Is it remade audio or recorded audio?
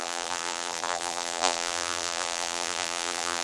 remade